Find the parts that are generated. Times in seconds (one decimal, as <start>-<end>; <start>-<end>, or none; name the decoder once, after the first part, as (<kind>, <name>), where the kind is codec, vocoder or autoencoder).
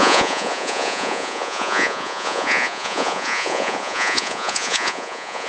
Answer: 0.0-5.5 (vocoder, Vocos)